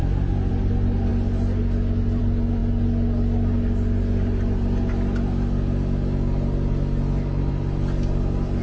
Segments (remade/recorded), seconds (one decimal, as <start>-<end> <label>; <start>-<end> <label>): 0.0-8.6 recorded